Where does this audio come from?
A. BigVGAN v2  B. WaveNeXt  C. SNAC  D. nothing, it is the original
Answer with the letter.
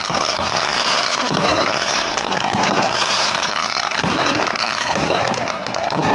C